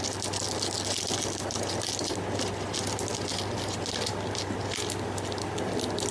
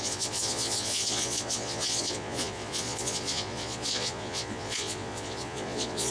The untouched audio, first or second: first